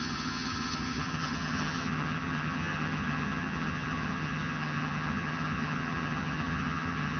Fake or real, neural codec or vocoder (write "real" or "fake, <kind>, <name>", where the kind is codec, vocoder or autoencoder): fake, vocoder, HiFi-GAN